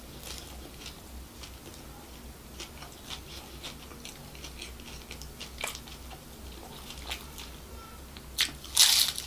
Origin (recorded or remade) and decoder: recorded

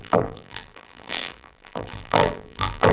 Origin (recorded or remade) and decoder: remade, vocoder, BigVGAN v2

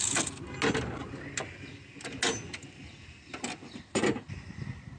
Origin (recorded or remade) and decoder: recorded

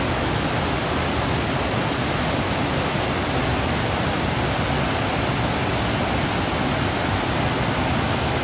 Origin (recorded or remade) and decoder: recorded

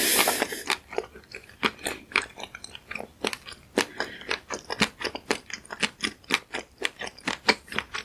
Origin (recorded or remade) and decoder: remade, vocoder, BigVGAN v2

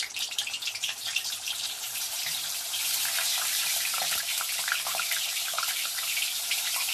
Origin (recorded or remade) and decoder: remade, vocoder, BigVGAN v2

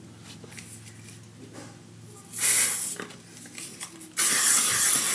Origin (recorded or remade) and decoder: recorded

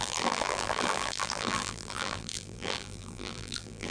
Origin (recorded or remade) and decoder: remade, vocoder, BigVGAN v2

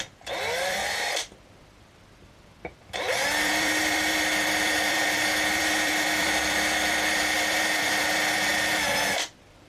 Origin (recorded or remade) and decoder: remade, vocoder, BigVGAN v2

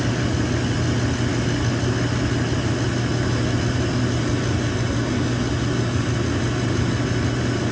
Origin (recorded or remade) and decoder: recorded